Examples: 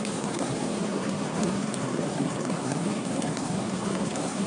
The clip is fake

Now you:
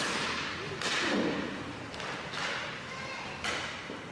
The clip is real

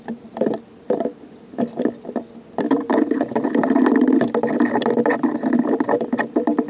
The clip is real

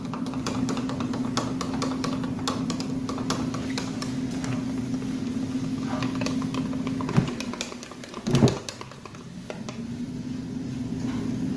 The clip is real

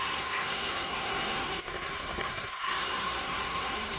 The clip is fake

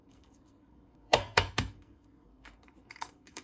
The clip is fake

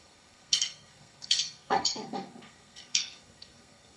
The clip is fake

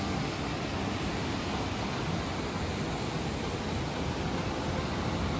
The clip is real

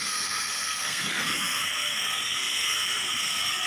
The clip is fake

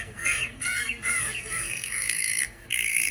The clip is fake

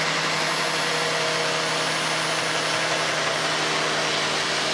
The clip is real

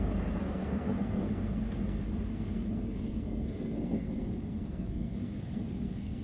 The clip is fake